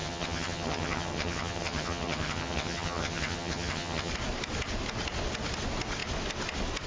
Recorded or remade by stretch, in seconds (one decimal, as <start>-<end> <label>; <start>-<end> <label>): 0.0-4.1 remade; 4.1-6.9 recorded